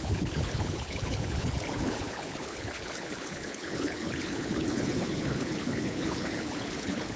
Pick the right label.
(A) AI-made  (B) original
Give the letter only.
A